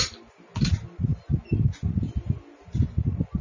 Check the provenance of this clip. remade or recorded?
recorded